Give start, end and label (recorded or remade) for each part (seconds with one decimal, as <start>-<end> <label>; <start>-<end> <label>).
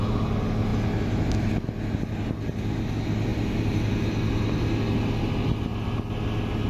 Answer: 0.0-6.7 recorded